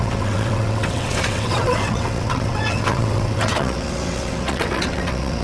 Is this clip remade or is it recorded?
remade